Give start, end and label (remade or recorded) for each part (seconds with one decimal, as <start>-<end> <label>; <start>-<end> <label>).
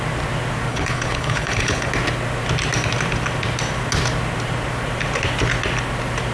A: 0.0-0.7 recorded; 0.7-1.9 remade; 1.9-6.3 recorded